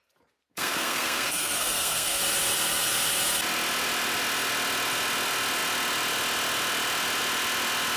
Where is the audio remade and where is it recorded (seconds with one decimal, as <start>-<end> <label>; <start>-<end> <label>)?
0.0-0.5 recorded; 0.5-2.2 remade; 2.2-8.0 recorded